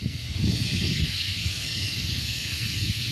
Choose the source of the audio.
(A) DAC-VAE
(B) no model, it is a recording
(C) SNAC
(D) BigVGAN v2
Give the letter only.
C